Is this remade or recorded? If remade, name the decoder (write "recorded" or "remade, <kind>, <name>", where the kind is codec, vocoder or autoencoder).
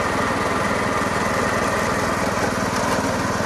recorded